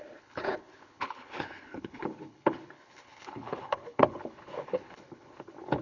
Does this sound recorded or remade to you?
remade